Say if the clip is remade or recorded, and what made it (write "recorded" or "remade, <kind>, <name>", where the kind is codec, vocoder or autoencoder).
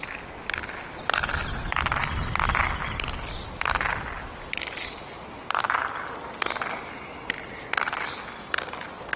recorded